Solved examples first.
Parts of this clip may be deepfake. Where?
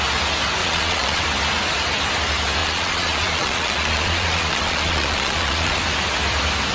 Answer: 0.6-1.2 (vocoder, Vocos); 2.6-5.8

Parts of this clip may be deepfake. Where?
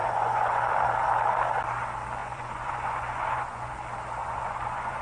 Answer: 0.0-0.6 (vocoder, Vocos); 2.2-3.7; 4.2-5.0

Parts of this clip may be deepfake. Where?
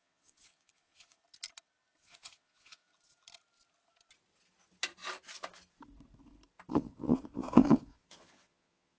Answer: 0.0-1.2 (vocoder, Vocos); 2.0-2.9; 6.7-9.0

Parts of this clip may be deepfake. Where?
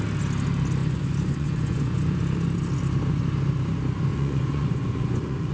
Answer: 0.8-2.2 (vocoder, Vocos); 4.1-5.5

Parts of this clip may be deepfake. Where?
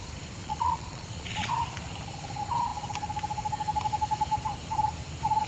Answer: 0.4-1.5 (vocoder, Vocos)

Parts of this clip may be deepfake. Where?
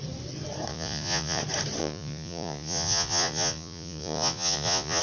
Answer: 0.7-1.4 (vocoder, Vocos); 1.8-5.0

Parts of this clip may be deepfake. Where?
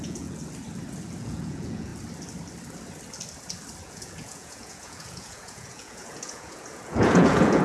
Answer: 0.0-0.4 (vocoder, Vocos); 1.2-1.9; 3.8-7.6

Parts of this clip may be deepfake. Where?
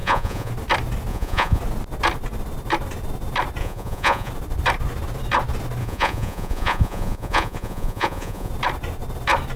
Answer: 0.0-0.5 (vocoder, Vocos); 1.1-1.6; 3.6-4.3; 5.8-8.5